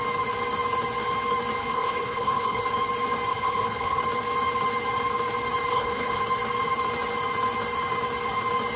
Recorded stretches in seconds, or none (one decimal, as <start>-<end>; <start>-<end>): 0.0-1.6; 2.6-3.3; 4.0-5.7; 6.2-8.8